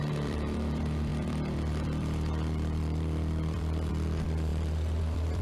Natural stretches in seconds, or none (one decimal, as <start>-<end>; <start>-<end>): none